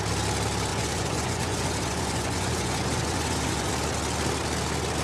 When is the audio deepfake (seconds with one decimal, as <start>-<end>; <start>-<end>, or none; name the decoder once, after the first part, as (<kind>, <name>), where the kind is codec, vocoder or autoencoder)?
0.7-3.7 (vocoder, Vocos)